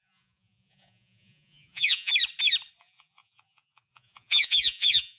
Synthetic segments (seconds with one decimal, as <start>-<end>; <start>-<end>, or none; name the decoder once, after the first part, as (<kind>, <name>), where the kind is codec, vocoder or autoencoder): 0.0-2.1 (vocoder, Vocos); 2.8-5.2